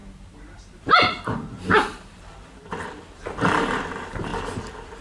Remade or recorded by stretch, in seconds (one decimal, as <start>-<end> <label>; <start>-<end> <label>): 0.0-4.3 remade; 4.3-5.0 recorded